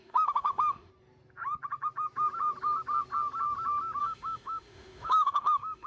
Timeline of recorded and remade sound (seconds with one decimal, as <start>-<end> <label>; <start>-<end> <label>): 0.0-0.9 remade; 0.9-4.0 recorded; 4.0-5.9 remade